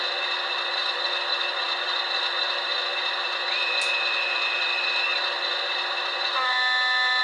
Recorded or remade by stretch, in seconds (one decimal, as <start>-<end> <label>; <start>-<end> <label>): 0.0-7.2 recorded